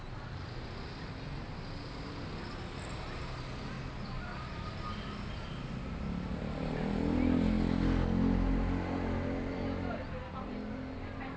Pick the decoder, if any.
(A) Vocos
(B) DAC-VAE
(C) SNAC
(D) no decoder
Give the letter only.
D